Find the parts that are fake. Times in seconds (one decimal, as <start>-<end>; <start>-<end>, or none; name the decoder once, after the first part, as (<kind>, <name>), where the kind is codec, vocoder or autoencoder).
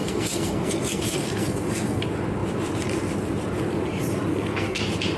0.0-2.0 (codec, SNAC); 4.3-4.8